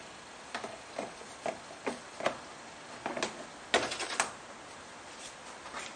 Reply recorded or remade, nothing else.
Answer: recorded